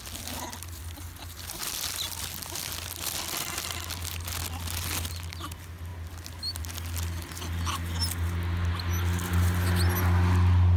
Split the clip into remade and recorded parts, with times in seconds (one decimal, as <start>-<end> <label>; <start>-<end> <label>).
0.0-10.8 recorded